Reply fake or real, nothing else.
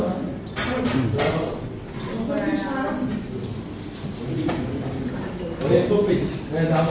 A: real